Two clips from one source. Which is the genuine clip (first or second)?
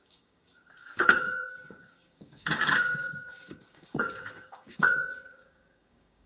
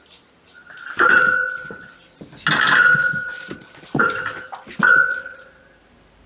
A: second